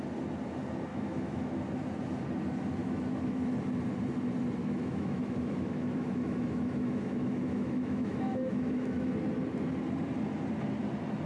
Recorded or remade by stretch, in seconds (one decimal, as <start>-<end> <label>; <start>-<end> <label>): 0.0-0.9 recorded; 0.9-1.5 remade; 1.5-2.8 recorded; 2.8-3.4 remade; 3.4-4.6 recorded; 4.6-9.1 remade; 9.1-11.3 recorded